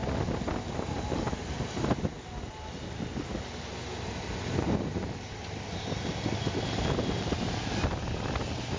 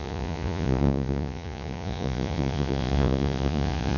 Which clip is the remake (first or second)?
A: second